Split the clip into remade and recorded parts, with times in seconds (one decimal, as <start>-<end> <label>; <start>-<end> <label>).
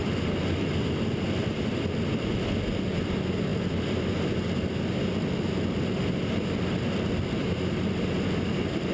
0.0-8.9 recorded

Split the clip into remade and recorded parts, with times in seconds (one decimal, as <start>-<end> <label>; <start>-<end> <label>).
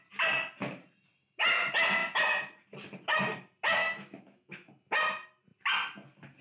0.0-3.8 recorded; 3.8-4.7 remade; 4.7-6.4 recorded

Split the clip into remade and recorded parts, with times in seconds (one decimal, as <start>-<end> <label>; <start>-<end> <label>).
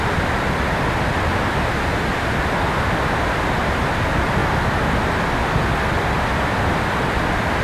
0.0-7.6 recorded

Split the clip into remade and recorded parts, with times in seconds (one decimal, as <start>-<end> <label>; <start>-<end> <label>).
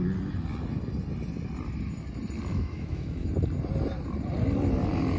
0.0-2.5 recorded; 2.5-3.3 remade; 3.3-5.2 recorded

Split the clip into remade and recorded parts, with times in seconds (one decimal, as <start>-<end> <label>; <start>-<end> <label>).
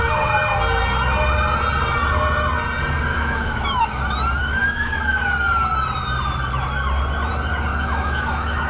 0.0-3.1 recorded; 3.1-3.8 remade; 3.8-4.4 recorded; 4.4-5.2 remade; 5.2-7.7 recorded; 7.7-8.7 remade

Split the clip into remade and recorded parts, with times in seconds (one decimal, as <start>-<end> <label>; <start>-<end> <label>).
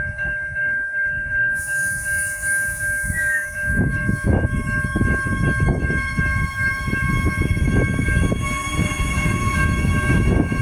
0.0-10.6 remade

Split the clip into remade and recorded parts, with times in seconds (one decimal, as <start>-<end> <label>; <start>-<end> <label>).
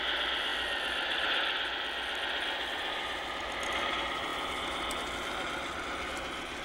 0.0-6.6 recorded